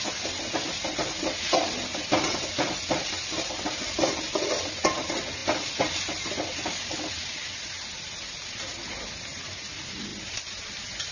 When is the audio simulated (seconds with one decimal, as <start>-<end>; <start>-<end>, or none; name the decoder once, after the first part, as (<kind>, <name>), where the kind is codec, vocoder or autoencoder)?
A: none

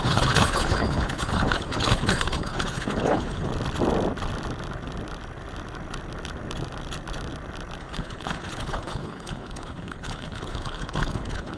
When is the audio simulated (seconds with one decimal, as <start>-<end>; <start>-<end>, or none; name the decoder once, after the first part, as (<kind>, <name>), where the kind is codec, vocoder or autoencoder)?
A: 0.0-3.5 (codec, HILCodec); 7.8-11.6

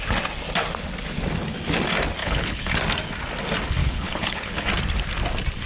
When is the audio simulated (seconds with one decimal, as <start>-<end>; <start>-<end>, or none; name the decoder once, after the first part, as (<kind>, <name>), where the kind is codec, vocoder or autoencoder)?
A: 2.2-2.7 (codec, HILCodec); 3.8-4.7